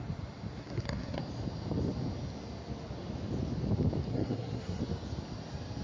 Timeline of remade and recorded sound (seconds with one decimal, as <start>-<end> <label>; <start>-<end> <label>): 0.0-0.6 recorded; 0.6-1.2 remade; 1.2-4.1 recorded; 4.1-4.8 remade; 4.8-5.8 recorded